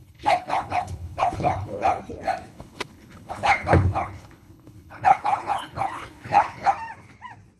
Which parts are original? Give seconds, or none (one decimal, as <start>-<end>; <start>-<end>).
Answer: 2.0-2.5; 6.7-7.6